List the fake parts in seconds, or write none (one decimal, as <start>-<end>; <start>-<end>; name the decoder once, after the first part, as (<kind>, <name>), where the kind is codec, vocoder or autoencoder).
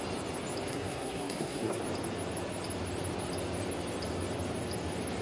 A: 0.7-1.8 (codec, SNAC)